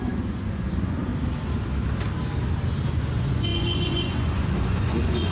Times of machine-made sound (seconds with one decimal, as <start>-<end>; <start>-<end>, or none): 0.0-1.1; 2.9-5.3